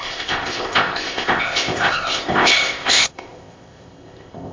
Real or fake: fake